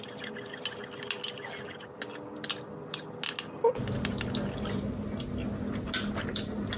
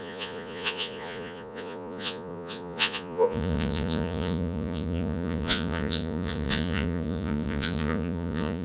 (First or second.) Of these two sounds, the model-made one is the second